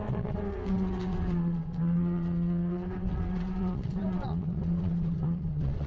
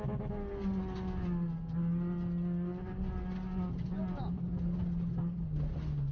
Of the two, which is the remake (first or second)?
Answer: first